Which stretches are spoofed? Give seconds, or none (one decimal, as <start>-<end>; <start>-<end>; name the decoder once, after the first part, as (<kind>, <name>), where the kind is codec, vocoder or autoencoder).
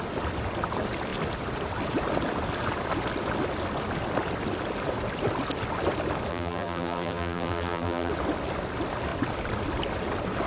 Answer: 6.3-8.1 (vocoder, BigVGAN v2)